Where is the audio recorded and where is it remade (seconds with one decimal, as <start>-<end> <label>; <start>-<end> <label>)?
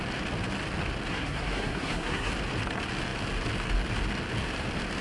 0.0-1.1 recorded; 1.1-2.3 remade; 2.3-5.0 recorded